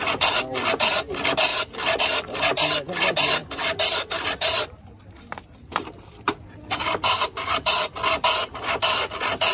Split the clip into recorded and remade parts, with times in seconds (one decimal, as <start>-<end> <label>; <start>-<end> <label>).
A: 0.0-1.5 recorded; 1.5-2.0 remade; 2.0-3.4 recorded; 3.4-7.7 remade; 7.7-9.5 recorded